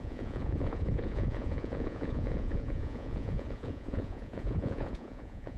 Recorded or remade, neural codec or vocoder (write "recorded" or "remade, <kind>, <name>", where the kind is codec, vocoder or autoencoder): remade, vocoder, Vocos